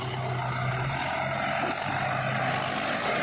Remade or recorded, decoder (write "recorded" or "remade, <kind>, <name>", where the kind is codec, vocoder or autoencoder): recorded